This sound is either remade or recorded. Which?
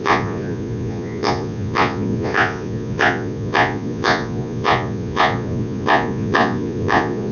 remade